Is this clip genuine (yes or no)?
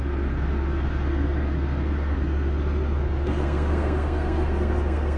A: no